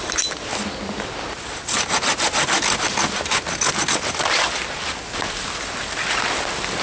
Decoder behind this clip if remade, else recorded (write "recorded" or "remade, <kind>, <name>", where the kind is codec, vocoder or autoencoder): recorded